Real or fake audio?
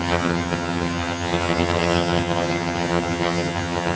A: fake